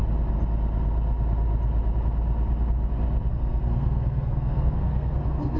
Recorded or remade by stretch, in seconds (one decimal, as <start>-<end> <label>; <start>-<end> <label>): 0.0-3.3 recorded; 3.3-5.6 remade